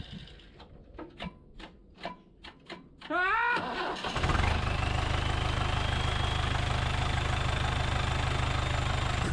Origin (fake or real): real